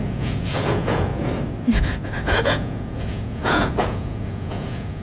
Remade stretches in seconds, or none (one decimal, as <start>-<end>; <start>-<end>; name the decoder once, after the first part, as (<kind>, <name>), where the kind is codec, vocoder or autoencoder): 0.0-1.1 (vocoder, Vocos); 2.4-5.0